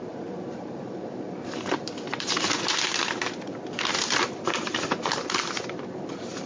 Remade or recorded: remade